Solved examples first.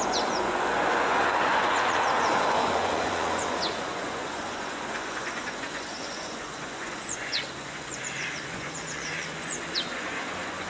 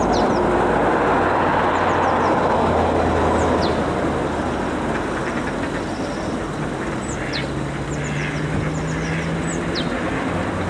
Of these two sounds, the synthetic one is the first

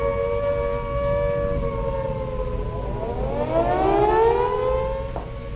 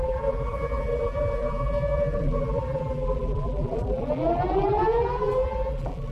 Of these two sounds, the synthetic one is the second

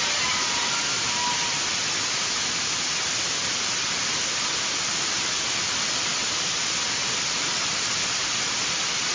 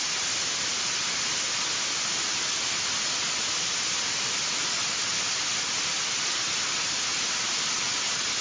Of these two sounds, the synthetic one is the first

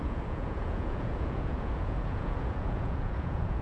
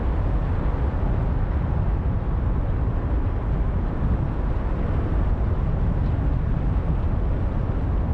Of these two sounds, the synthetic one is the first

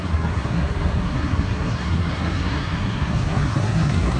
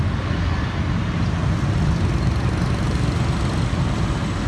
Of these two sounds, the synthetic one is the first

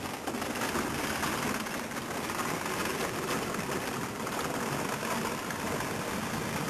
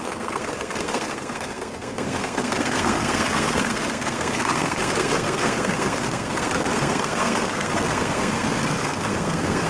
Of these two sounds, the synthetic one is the second